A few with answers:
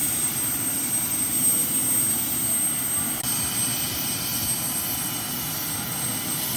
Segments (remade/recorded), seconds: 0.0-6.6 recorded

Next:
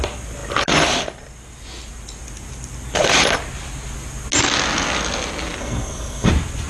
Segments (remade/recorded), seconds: 0.0-5.6 recorded; 5.6-6.3 remade; 6.3-6.7 recorded

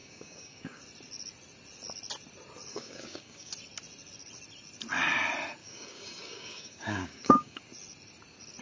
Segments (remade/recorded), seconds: 0.0-0.8 remade; 0.8-2.7 recorded; 2.7-3.5 remade; 3.5-5.6 recorded; 5.6-7.6 remade; 7.6-8.6 recorded

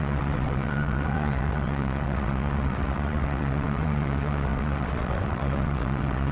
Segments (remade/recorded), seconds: 0.0-6.3 remade